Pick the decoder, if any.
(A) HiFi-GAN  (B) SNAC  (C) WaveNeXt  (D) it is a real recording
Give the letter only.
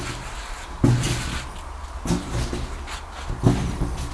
D